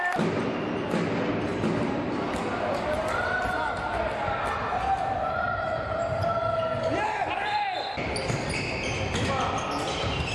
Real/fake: real